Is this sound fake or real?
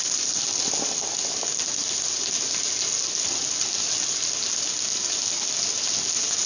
real